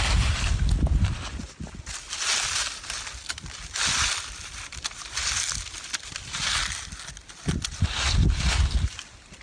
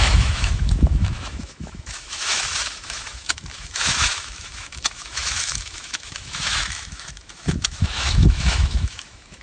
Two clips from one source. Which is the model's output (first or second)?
second